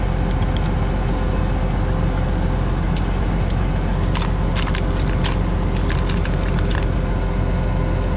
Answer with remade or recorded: recorded